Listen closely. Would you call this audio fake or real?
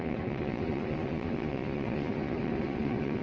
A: fake